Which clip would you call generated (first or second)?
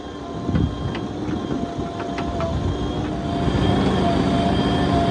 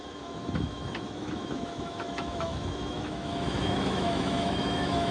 second